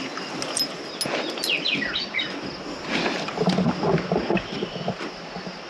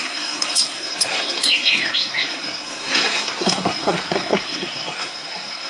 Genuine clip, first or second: first